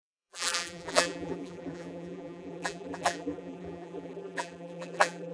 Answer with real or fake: fake